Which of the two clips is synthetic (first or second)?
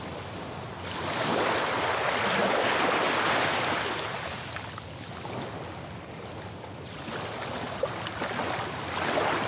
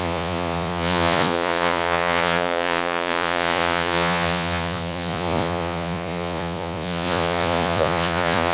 second